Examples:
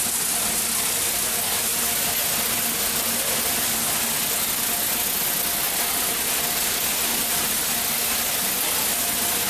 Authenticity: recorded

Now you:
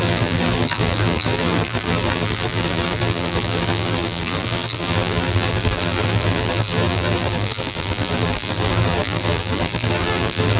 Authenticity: remade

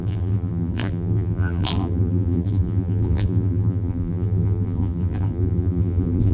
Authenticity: remade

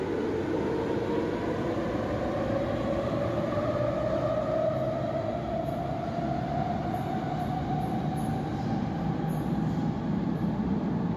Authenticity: recorded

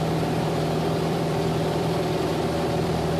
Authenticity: remade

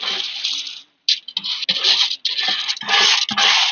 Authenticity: recorded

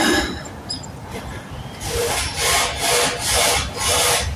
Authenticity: remade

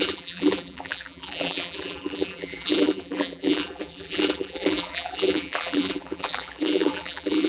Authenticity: remade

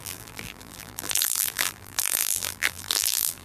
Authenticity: remade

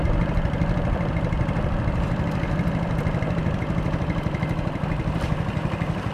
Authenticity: remade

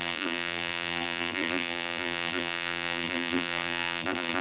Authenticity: remade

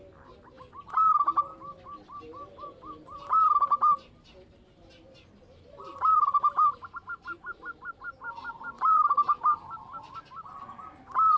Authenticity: remade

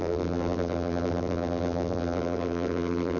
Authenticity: remade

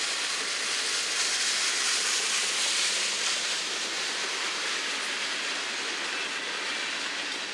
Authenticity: recorded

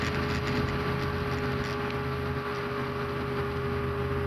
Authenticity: recorded